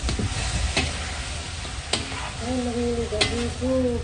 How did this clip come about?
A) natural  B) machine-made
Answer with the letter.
A